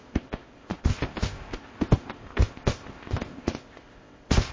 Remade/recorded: remade